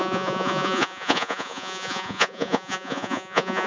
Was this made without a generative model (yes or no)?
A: no